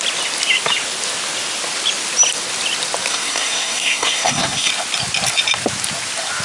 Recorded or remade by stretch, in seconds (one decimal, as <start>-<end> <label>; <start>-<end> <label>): 0.0-3.1 recorded; 3.1-4.7 remade; 4.7-6.4 recorded